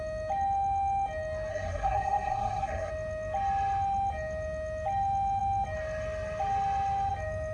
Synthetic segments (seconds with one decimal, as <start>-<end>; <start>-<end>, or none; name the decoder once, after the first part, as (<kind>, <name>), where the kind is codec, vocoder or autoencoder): 1.5-2.9 (codec, SNAC)